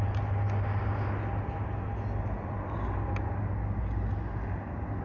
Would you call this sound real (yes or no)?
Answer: yes